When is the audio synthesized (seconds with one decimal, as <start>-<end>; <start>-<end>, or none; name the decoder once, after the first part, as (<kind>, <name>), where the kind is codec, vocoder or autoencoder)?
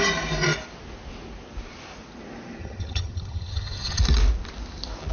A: 2.6-4.0 (vocoder, HiFi-GAN)